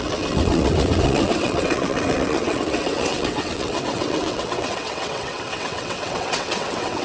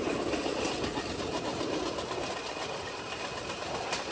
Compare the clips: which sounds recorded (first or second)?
second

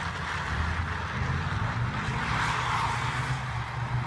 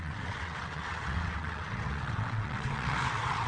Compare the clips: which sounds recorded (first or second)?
first